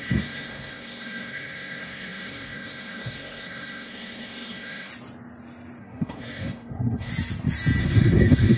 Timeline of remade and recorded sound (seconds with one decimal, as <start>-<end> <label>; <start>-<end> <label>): 0.0-4.9 remade; 4.9-5.8 recorded; 5.8-7.1 remade; 7.1-7.8 recorded; 7.8-8.6 remade